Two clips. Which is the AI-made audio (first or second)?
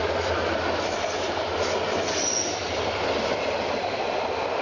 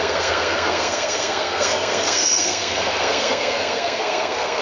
second